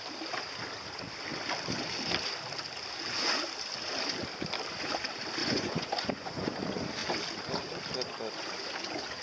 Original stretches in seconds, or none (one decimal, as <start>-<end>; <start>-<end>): 0.0-5.4; 6.6-9.2